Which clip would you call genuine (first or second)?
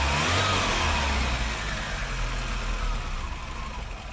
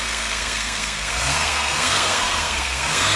first